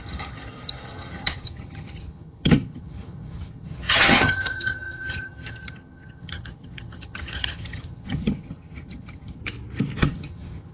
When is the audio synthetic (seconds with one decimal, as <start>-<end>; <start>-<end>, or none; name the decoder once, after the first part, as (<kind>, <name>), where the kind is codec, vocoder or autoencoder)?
0.0-9.4 (vocoder, HiFi-GAN); 10.0-10.7